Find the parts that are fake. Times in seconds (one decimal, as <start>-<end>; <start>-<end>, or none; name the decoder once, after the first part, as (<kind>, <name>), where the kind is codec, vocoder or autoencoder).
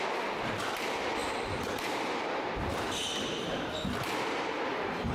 1.2-3.8 (vocoder, BigVGAN v2)